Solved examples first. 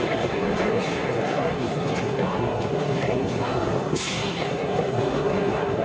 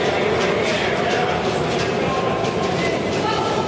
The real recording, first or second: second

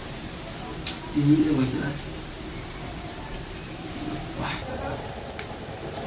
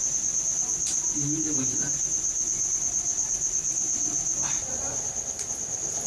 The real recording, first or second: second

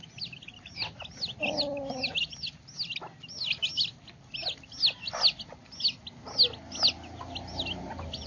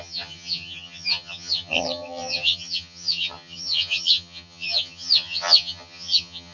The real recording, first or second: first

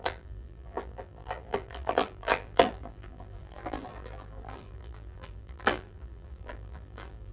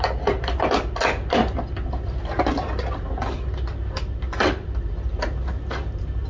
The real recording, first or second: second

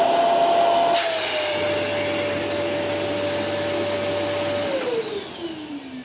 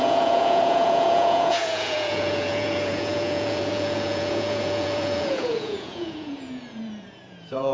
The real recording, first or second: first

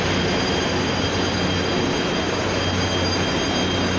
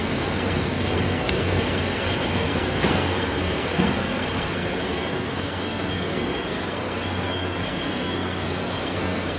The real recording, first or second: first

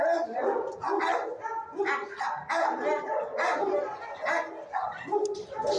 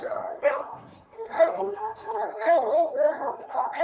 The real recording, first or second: first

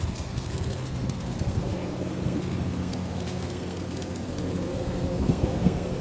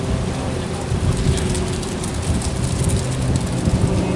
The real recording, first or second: second